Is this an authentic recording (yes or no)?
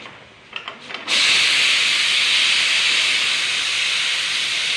yes